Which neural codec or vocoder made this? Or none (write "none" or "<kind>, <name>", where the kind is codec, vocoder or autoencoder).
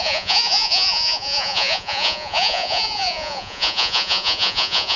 vocoder, Vocos